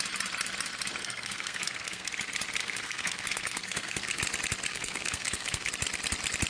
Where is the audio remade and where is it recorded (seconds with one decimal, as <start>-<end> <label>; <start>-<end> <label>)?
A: 0.0-1.0 recorded; 1.0-2.1 remade; 2.1-2.6 recorded; 2.6-4.2 remade; 4.2-4.7 recorded; 4.7-5.7 remade; 5.7-6.5 recorded